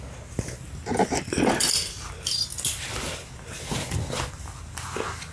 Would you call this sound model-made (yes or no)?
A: no